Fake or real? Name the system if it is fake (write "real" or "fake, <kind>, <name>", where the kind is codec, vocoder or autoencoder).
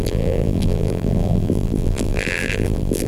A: fake, vocoder, BigVGAN v2